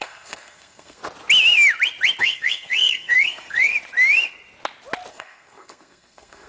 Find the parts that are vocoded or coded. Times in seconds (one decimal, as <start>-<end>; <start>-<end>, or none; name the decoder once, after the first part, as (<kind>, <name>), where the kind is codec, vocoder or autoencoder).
0.0-1.0 (codec, SNAC); 2.2-3.7; 5.1-6.5